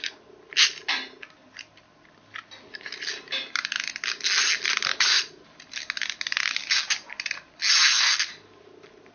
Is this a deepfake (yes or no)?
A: no